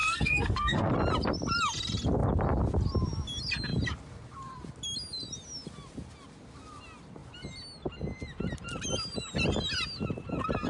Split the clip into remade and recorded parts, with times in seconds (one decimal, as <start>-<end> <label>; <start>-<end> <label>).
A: 0.0-0.9 remade; 0.9-10.7 recorded